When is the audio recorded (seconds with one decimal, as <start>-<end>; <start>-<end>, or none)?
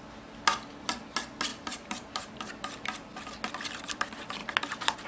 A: 0.0-1.5; 2.5-5.1